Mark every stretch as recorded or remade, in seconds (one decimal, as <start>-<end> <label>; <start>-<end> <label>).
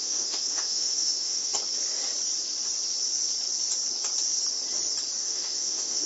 0.0-1.5 remade; 1.5-5.2 recorded; 5.2-6.1 remade